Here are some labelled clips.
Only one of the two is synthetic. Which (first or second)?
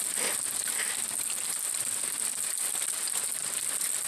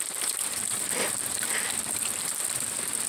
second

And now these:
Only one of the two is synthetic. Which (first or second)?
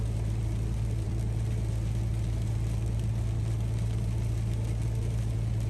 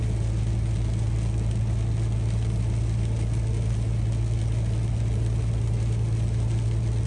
first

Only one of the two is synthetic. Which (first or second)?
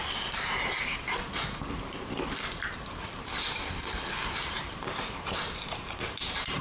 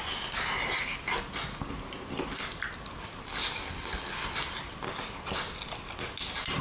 first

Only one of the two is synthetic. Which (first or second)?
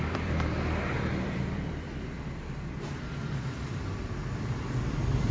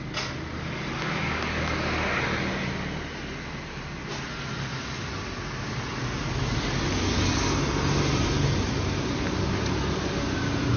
first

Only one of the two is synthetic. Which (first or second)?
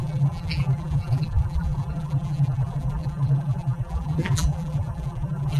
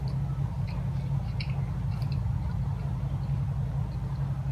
first